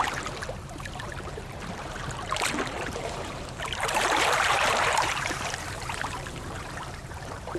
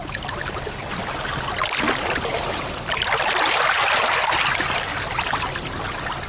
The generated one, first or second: first